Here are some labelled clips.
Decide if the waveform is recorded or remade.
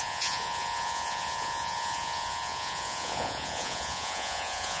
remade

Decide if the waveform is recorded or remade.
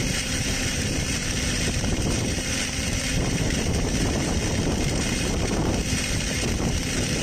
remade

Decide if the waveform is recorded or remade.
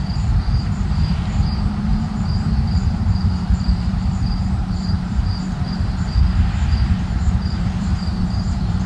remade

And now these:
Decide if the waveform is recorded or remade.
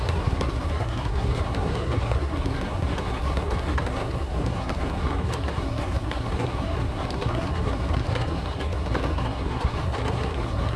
remade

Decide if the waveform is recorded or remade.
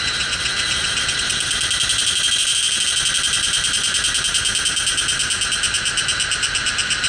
recorded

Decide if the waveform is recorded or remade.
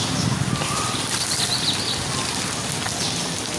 recorded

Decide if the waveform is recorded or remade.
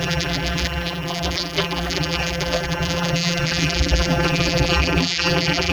remade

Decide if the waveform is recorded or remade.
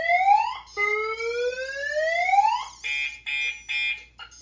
recorded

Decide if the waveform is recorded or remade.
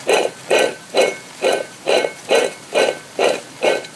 recorded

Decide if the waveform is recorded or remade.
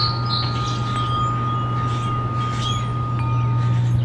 recorded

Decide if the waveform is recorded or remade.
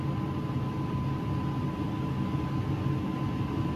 recorded